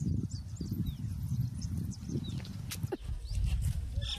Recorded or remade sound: recorded